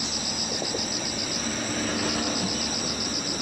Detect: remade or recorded recorded